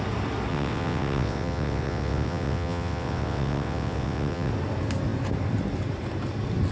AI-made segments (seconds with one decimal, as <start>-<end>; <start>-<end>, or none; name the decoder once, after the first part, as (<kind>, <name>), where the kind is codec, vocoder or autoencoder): 0.5-4.5 (vocoder, WaveNeXt)